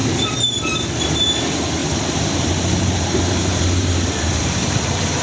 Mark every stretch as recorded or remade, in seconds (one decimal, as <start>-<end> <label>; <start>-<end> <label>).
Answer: 0.0-1.8 recorded; 1.8-5.2 remade